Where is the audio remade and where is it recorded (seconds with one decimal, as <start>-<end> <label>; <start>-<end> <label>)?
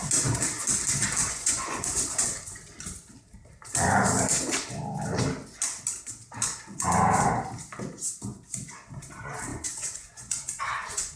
0.0-1.2 recorded; 1.2-2.0 remade; 2.0-9.5 recorded; 9.5-11.2 remade